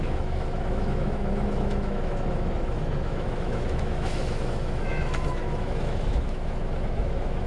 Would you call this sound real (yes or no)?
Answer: no